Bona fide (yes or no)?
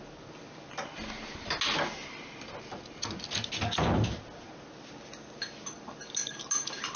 yes